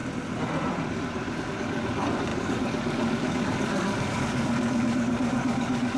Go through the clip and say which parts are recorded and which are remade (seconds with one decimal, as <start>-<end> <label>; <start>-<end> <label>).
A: 0.0-1.4 recorded; 1.4-6.0 remade